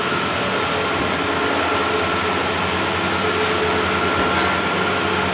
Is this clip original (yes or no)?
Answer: yes